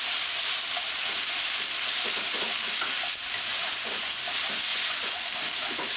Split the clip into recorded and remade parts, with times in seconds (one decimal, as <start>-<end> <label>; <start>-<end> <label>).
0.0-3.5 recorded; 3.5-4.2 remade; 4.2-4.7 recorded; 4.7-5.3 remade; 5.3-6.0 recorded